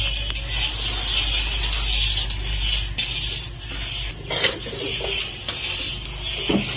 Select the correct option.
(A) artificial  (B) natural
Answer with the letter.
B